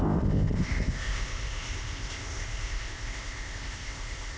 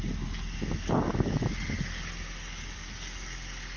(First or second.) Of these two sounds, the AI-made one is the first